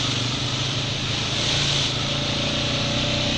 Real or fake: real